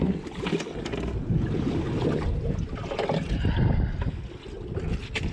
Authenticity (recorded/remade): recorded